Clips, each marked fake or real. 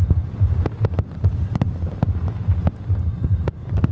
real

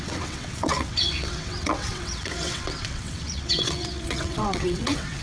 fake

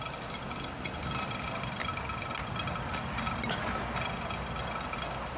real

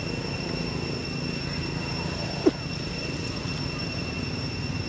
real